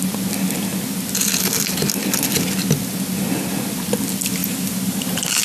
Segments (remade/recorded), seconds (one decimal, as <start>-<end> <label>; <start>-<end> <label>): 0.0-4.4 recorded; 4.4-5.4 remade